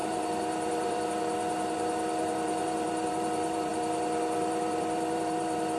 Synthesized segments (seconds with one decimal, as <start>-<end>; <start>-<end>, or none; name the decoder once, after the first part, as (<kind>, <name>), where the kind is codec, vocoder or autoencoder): 0.0-5.8 (vocoder, BigVGAN v2)